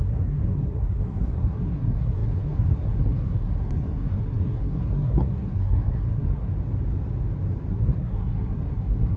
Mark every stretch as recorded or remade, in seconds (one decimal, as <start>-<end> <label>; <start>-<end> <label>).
0.0-6.5 remade; 6.5-7.7 recorded; 7.7-9.2 remade